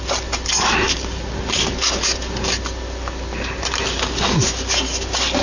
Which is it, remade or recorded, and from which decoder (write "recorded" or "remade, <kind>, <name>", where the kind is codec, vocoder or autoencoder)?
recorded